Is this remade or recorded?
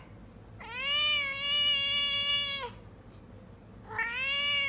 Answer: recorded